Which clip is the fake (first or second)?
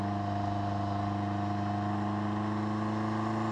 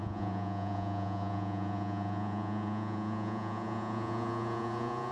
second